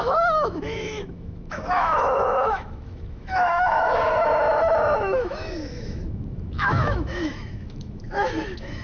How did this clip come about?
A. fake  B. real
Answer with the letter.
A